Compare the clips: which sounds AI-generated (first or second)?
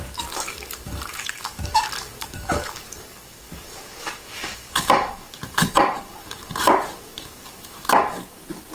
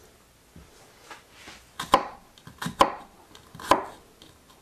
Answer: first